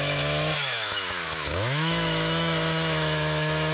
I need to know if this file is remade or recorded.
remade